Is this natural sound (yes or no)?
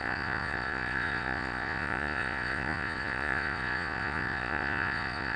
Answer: no